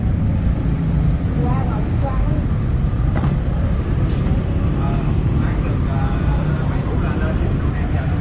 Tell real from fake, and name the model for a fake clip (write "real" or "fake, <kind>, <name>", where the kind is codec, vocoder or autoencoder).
fake, vocoder, BigVGAN v2